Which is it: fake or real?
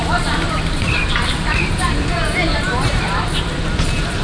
fake